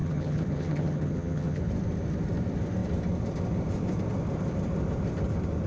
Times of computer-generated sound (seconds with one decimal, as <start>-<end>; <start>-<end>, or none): 0.0-1.6